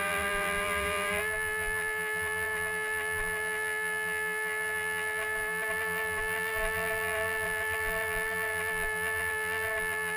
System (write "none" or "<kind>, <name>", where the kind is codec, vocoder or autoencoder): vocoder, BigVGAN v2